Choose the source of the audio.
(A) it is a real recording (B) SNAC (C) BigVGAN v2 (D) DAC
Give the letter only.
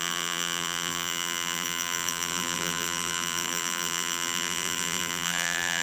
C